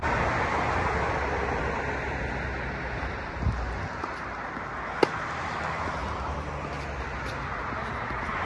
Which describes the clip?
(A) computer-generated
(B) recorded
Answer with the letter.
B